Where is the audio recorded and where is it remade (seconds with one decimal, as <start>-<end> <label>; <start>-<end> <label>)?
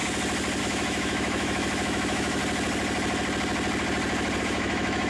0.0-0.6 recorded; 0.6-2.4 remade; 2.4-4.4 recorded; 4.4-5.1 remade